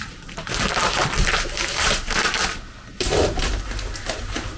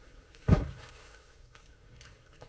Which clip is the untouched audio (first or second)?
first